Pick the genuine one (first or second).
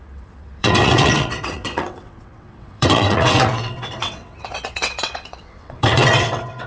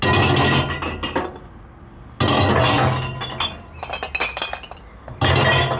second